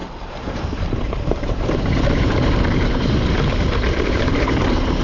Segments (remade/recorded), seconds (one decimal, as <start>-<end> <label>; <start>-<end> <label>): 0.0-5.0 remade

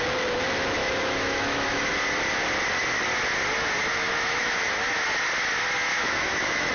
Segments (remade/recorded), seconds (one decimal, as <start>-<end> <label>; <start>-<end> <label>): 0.0-0.8 recorded; 0.8-1.9 remade; 1.9-3.9 recorded; 3.9-4.7 remade; 4.7-5.9 recorded; 5.9-6.7 remade

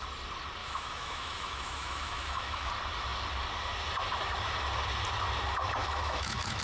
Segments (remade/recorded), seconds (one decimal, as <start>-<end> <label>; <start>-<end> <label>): 0.0-0.6 recorded; 0.6-2.7 remade; 2.7-5.8 recorded; 5.8-6.6 remade

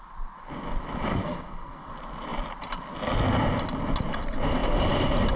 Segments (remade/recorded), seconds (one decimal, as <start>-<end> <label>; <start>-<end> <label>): 0.0-1.1 recorded; 1.1-1.9 remade; 1.9-5.4 recorded

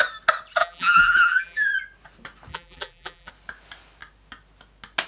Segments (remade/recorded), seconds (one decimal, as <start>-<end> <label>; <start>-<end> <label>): 0.0-0.6 recorded; 0.6-1.7 remade; 1.7-2.5 recorded; 2.5-3.3 remade; 3.3-5.1 recorded

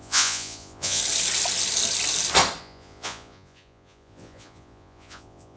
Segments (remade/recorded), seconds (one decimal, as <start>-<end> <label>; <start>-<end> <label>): 0.0-1.0 remade; 1.0-2.6 recorded; 2.6-5.6 remade